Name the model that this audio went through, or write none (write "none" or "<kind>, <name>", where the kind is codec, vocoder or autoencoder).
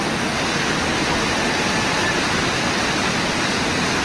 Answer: none